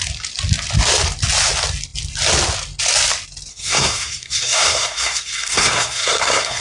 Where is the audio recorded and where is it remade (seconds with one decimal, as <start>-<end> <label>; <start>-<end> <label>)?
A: 0.0-3.5 recorded; 3.5-6.6 remade